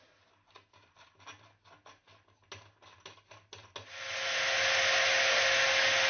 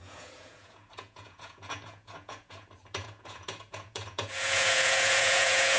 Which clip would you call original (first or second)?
first